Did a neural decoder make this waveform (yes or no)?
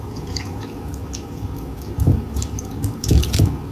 yes